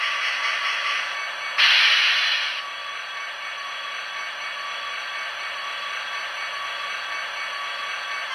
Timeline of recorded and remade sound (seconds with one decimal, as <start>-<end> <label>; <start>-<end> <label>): 0.0-2.8 recorded; 2.8-6.2 remade; 6.2-8.3 recorded